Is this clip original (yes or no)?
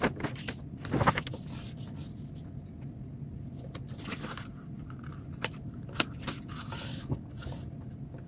yes